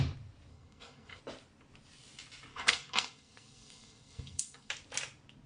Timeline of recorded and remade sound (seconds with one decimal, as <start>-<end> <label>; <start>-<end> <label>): 0.0-0.5 recorded; 0.5-1.2 remade; 1.2-2.5 recorded; 2.5-4.7 remade; 4.7-5.5 recorded

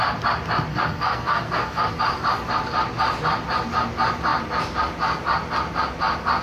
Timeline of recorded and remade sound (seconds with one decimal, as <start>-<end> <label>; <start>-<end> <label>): 0.0-0.7 recorded; 0.7-2.0 remade; 2.0-6.4 recorded

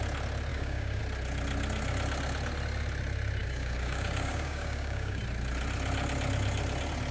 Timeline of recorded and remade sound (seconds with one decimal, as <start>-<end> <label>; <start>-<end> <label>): 0.0-0.5 recorded; 0.5-1.0 remade; 1.0-3.4 recorded; 3.4-5.2 remade; 5.2-7.1 recorded